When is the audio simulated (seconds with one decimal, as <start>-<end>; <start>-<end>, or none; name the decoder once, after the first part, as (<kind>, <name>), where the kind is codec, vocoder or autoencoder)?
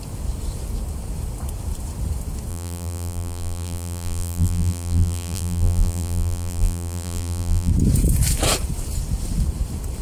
2.5-7.7 (vocoder, BigVGAN v2)